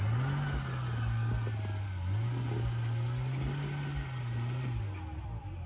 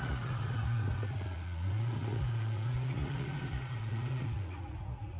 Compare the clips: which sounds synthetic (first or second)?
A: second